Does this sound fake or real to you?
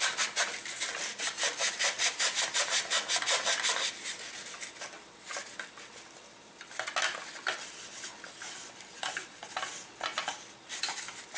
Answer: real